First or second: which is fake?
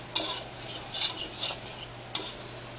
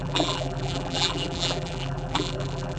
second